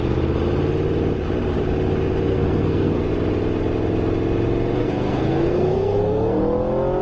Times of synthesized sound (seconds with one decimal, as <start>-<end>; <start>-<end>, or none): 2.3-3.1; 4.8-6.4